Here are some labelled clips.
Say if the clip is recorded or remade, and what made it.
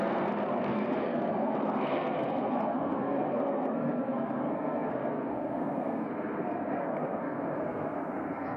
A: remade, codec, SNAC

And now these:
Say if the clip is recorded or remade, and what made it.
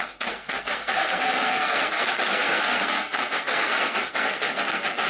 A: remade, codec, SNAC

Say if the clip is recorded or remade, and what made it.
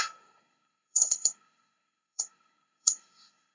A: remade, codec, SNAC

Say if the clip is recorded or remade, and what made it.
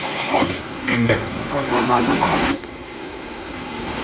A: remade, codec, SNAC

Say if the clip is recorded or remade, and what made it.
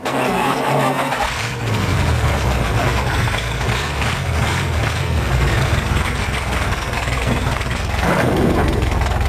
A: remade, codec, SNAC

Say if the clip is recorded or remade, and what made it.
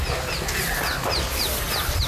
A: recorded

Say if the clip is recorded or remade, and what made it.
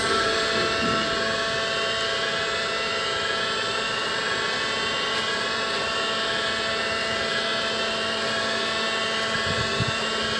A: recorded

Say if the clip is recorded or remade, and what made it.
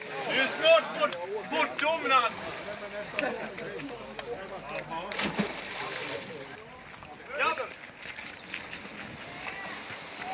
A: recorded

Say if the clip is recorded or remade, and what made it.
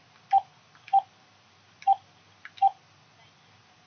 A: recorded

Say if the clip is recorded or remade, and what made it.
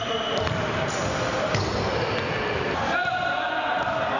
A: recorded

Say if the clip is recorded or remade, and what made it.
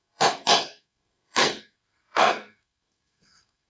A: remade, codec, SNAC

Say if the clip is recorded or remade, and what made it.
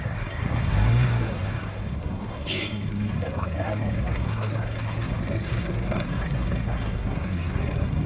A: remade, codec, SNAC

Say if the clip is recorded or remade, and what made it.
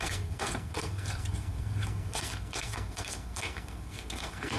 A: remade, codec, SNAC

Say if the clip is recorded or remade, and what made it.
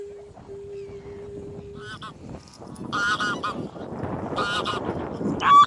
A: recorded